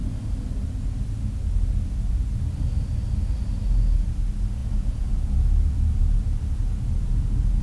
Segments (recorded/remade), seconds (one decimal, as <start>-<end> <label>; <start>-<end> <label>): 0.0-4.6 recorded; 4.6-6.0 remade; 6.0-7.6 recorded